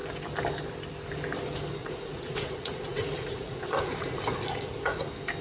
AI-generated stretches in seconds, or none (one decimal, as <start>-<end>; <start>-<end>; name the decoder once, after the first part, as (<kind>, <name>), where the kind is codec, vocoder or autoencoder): 1.8-5.0 (vocoder, Vocos)